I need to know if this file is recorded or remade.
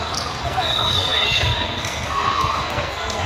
remade